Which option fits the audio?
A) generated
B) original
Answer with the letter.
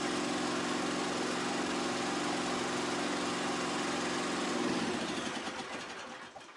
B